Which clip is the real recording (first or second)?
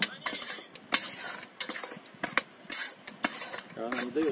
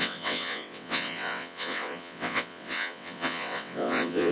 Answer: first